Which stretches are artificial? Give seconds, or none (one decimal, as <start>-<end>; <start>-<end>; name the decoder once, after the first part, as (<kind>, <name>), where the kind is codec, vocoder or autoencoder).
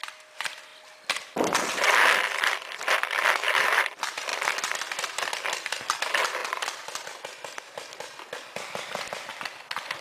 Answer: 0.0-0.7 (vocoder, BigVGAN v2); 1.7-4.3; 5.3-6.4; 7.2-9.3